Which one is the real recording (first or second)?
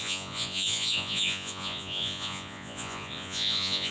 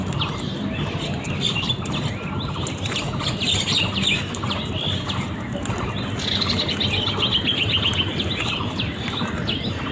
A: second